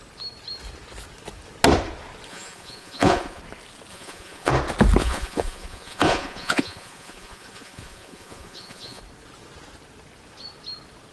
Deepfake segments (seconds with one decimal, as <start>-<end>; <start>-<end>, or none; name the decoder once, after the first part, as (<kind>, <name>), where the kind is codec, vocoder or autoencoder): 2.3-3.4 (vocoder, Vocos); 3.9-4.5; 5.0-9.0